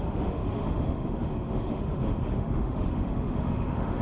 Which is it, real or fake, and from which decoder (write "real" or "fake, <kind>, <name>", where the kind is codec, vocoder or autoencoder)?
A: fake, autoencoder, DAC-VAE